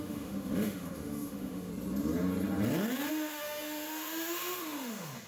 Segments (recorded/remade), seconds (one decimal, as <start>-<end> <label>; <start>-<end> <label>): 0.0-1.7 remade; 1.7-3.1 recorded; 3.1-5.3 remade